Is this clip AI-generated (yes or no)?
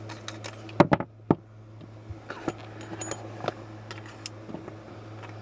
no